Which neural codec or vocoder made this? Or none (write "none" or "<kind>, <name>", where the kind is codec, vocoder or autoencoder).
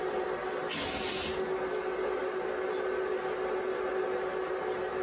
none